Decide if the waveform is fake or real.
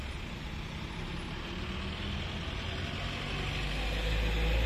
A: real